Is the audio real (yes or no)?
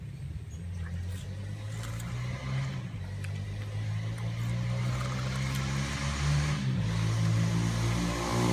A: yes